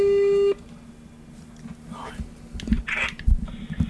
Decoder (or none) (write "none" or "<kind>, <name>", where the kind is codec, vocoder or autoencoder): none